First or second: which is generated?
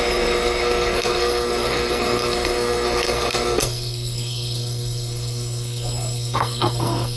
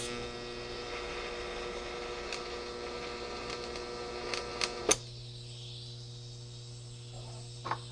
first